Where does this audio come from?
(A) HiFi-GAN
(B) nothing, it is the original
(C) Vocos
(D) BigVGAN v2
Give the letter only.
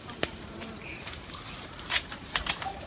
D